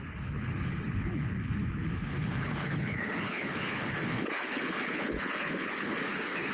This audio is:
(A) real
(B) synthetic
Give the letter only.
B